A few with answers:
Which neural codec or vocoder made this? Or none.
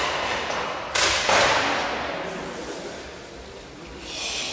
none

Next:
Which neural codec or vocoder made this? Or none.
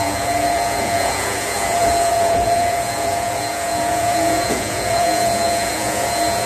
vocoder, Vocos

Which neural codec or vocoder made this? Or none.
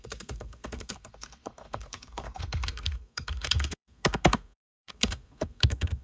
codec, SNAC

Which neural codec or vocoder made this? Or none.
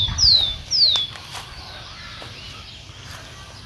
none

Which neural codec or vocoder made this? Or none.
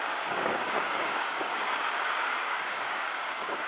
codec, DAC